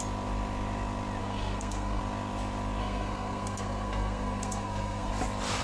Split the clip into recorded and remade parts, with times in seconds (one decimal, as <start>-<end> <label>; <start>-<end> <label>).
0.0-1.2 recorded; 1.2-2.0 remade; 2.0-2.8 recorded; 2.8-5.1 remade; 5.1-5.6 recorded